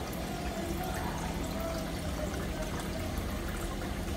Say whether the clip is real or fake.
real